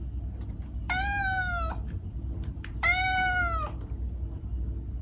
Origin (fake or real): real